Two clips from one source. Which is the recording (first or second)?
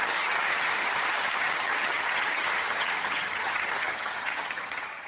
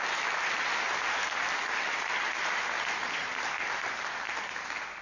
second